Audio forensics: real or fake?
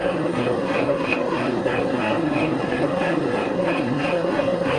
fake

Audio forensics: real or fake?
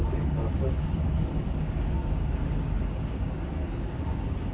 fake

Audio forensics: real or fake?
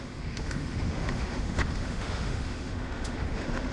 fake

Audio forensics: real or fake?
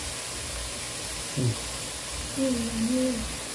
real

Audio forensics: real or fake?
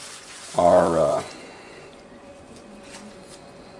fake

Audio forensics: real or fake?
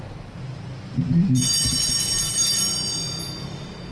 real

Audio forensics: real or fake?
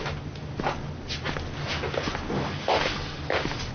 real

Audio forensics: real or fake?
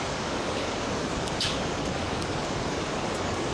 fake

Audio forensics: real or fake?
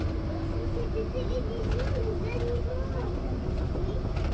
real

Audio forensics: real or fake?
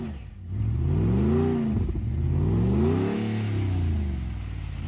real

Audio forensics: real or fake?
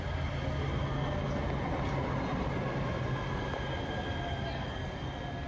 real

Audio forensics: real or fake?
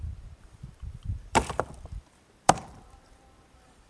fake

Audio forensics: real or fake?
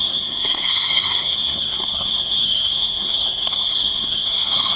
fake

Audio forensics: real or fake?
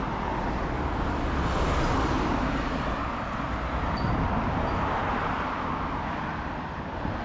real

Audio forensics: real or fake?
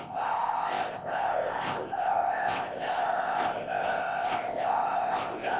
fake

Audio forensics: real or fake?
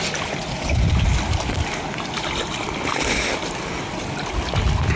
real